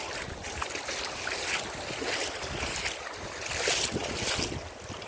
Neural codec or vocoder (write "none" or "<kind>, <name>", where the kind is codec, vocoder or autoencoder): none